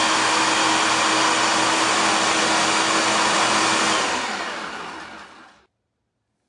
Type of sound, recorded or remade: recorded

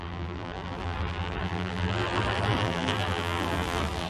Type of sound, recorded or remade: remade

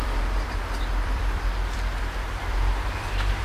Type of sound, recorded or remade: remade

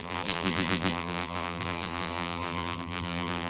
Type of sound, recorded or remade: remade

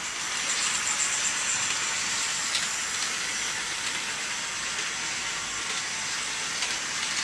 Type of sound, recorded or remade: recorded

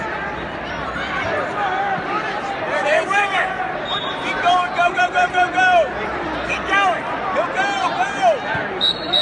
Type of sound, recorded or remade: remade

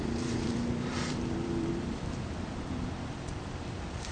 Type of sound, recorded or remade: remade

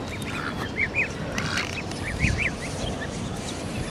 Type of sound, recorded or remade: recorded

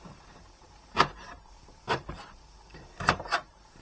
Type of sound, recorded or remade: remade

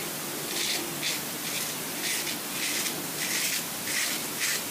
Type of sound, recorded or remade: recorded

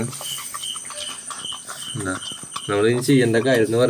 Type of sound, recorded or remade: recorded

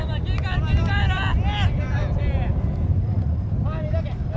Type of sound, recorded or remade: recorded